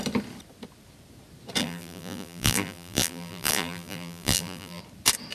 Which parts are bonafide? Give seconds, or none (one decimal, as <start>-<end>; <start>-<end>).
0.0-1.6; 4.8-5.3